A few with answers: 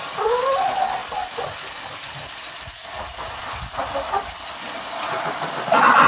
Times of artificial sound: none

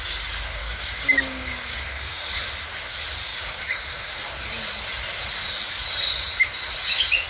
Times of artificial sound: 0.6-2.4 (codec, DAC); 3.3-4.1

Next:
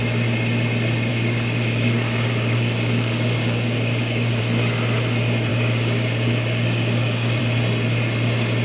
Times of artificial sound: 1.1-4.4 (codec, DAC); 5.5-7.4

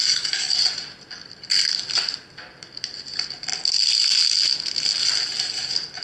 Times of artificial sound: 0.0-0.6 (codec, DAC)